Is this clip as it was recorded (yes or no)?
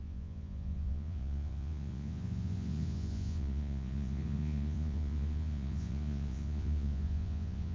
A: no